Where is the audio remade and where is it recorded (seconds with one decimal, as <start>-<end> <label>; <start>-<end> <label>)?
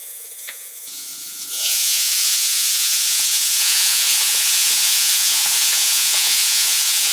0.0-7.1 remade